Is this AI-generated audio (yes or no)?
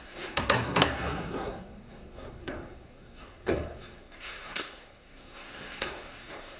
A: yes